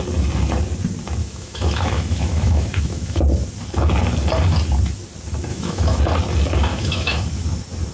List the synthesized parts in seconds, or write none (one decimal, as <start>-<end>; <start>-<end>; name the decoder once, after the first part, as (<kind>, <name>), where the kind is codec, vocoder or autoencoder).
1.2-3.2 (autoencoder, DAC-VAE); 5.5-6.0; 6.7-7.2